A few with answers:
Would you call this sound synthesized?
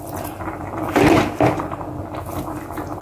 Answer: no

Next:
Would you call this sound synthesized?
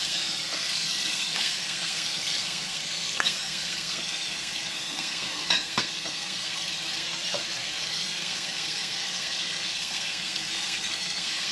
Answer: yes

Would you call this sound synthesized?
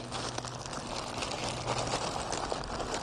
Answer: no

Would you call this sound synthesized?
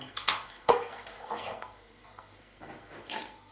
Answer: yes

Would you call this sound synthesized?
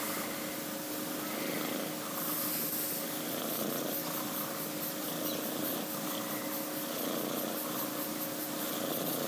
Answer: no